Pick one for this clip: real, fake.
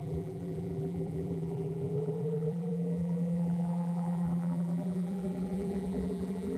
fake